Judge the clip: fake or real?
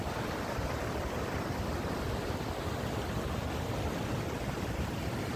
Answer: real